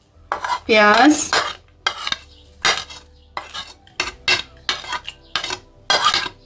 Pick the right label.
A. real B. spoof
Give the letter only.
A